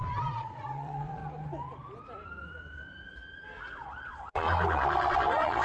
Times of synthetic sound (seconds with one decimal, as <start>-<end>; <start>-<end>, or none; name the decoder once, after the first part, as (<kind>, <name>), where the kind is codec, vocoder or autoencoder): 0.0-1.2 (vocoder, Vocos); 3.6-5.6